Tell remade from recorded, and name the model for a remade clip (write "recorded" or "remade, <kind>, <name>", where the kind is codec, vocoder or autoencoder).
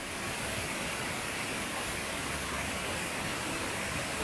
remade, codec, DAC